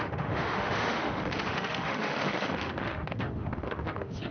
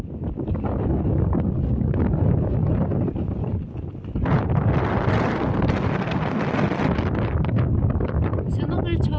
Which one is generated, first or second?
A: first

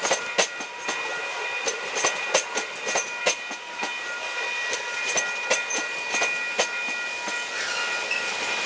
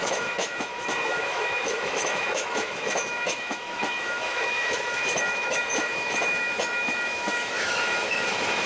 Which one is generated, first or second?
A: second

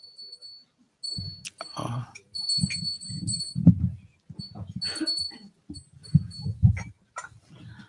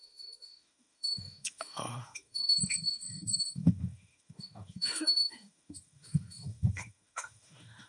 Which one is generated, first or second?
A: second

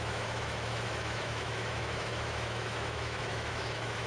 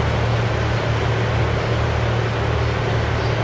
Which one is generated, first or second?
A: first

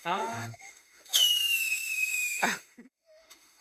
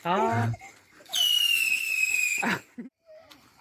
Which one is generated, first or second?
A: first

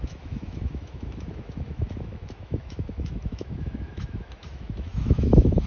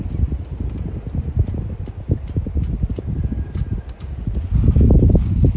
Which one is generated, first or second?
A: first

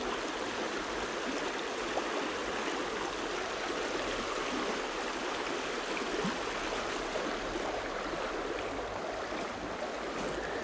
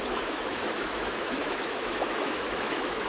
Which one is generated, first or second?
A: second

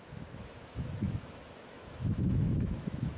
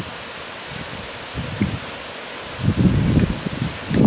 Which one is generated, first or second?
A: first